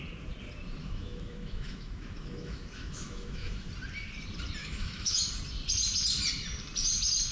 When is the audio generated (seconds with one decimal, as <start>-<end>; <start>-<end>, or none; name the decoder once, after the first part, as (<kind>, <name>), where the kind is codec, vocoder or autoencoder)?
0.8-3.7 (autoencoder, DAC-VAE); 4.6-5.3